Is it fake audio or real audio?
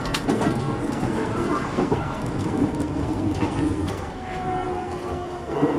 fake